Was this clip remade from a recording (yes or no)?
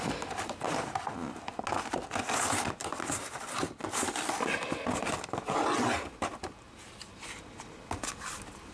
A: no